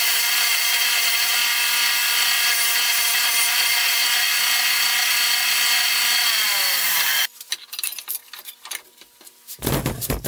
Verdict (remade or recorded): recorded